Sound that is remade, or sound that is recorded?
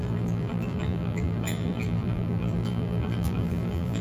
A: remade